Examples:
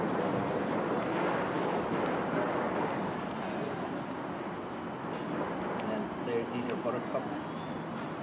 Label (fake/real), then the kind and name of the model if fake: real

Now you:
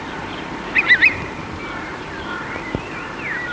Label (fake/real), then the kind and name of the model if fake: fake, vocoder, BigVGAN v2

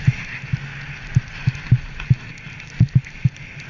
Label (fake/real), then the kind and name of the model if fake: real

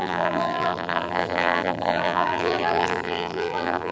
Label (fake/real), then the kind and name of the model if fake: fake, vocoder, BigVGAN v2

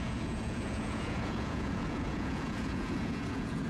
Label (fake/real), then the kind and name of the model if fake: fake, vocoder, Vocos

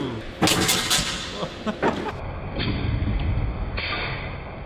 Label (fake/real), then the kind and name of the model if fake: real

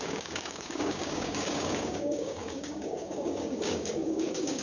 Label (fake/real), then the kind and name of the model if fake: fake, codec, DAC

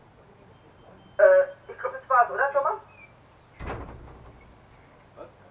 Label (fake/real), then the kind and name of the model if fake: real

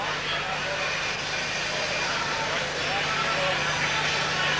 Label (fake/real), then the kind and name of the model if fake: real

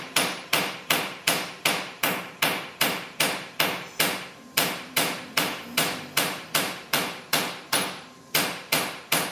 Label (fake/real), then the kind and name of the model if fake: fake, vocoder, BigVGAN v2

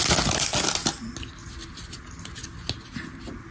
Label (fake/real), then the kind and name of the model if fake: real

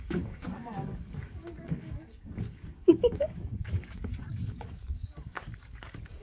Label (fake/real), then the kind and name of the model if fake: fake, codec, DAC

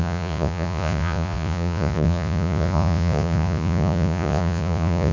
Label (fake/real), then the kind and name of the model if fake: fake, vocoder, Vocos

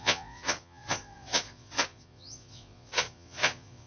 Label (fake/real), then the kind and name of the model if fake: fake, vocoder, Vocos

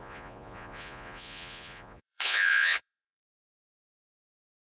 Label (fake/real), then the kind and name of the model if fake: fake, vocoder, Vocos